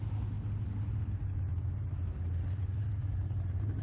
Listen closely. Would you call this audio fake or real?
real